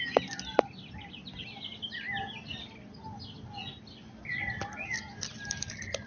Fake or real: real